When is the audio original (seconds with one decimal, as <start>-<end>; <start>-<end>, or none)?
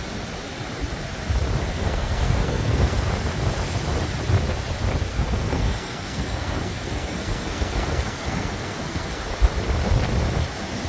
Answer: 0.0-1.7; 3.1-5.1; 9.2-10.9